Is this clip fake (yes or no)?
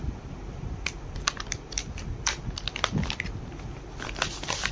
no